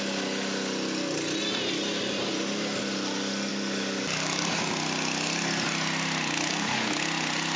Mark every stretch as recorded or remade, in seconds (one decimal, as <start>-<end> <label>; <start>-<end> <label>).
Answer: 0.0-3.5 recorded; 3.5-4.5 remade; 4.5-6.5 recorded; 6.5-7.0 remade; 7.0-7.6 recorded